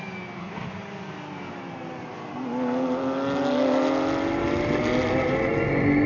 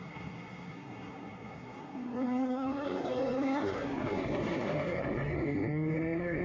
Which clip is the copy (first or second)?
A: second